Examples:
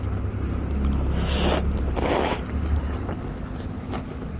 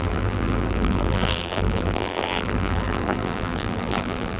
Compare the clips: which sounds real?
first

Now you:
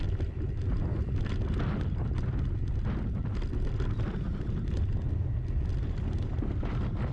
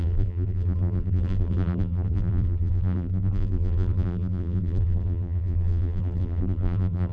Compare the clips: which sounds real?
first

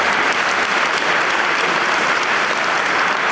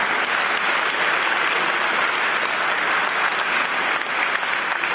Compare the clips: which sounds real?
second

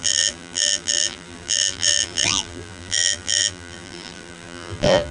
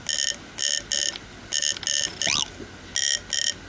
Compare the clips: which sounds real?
second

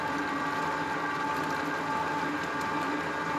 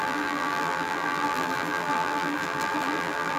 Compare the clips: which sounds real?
first